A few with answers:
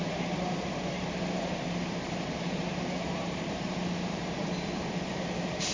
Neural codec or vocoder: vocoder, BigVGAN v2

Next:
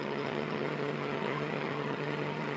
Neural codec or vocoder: vocoder, HiFi-GAN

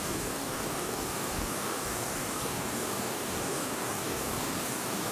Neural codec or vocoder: codec, DAC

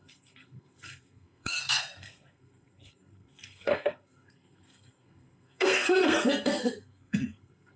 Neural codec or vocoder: codec, SNAC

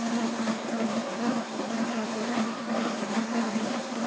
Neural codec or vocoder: codec, SNAC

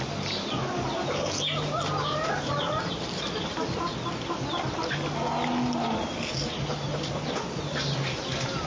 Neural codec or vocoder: none